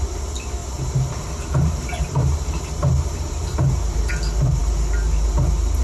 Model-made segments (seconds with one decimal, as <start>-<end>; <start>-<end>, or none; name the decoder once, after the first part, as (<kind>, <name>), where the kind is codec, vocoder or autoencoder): 0.6-4.1 (vocoder, BigVGAN v2)